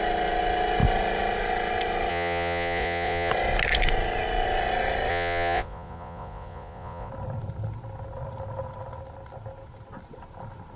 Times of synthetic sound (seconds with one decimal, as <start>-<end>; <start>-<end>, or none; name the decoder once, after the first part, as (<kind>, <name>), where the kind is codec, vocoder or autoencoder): 2.1-3.3 (vocoder, Vocos); 5.1-7.1